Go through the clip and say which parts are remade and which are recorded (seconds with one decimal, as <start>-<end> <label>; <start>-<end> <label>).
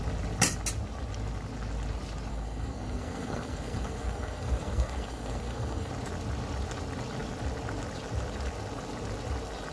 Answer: 0.0-2.3 recorded; 2.3-5.9 remade; 5.9-9.7 recorded